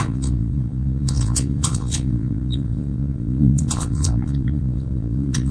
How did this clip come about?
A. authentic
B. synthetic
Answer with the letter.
B